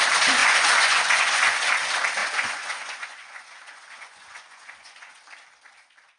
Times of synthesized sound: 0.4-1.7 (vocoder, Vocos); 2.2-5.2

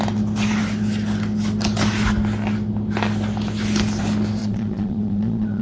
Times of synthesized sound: 4.4-5.6 (vocoder, Vocos)